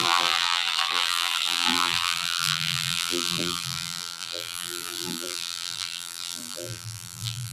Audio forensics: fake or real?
fake